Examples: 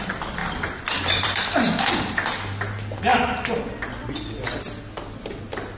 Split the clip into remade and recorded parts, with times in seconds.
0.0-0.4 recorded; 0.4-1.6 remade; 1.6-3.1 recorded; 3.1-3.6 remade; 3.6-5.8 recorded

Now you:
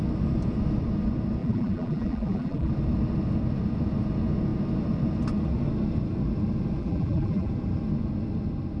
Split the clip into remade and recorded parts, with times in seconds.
0.0-1.4 recorded; 1.4-2.7 remade; 2.7-6.8 recorded; 6.8-7.5 remade; 7.5-8.8 recorded

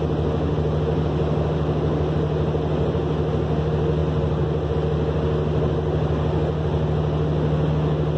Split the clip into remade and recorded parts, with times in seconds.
0.0-8.2 recorded

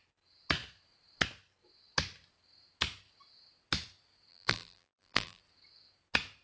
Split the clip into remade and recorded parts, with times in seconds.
0.0-4.3 recorded; 4.3-5.4 remade; 5.4-6.4 recorded

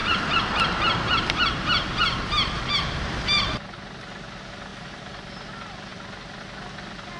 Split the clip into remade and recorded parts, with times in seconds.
0.0-3.7 remade; 3.7-4.7 recorded; 4.7-5.3 remade; 5.3-7.2 recorded

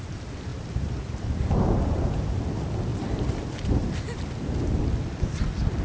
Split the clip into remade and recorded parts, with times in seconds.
0.0-0.5 recorded; 0.5-2.4 remade; 2.4-2.9 recorded; 2.9-3.9 remade; 3.9-5.8 recorded

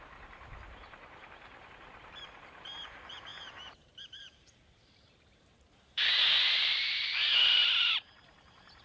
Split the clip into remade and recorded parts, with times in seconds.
0.0-8.8 remade